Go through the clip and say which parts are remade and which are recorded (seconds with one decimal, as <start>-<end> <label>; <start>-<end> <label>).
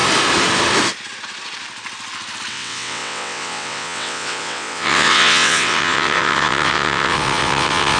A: 0.0-2.5 recorded; 2.5-8.0 remade